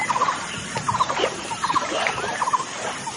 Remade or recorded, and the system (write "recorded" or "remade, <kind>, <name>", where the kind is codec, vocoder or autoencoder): remade, vocoder, BigVGAN v2